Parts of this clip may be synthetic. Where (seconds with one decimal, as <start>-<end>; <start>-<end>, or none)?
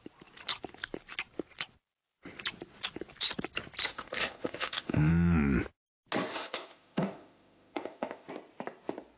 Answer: 3.9-5.1; 6.3-8.3